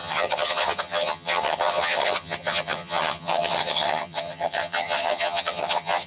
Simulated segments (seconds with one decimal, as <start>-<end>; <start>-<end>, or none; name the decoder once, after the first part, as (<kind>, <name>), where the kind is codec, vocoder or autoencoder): 0.0-6.1 (vocoder, HiFi-GAN)